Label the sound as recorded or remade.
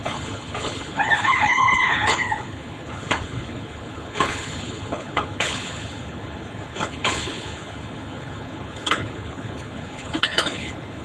remade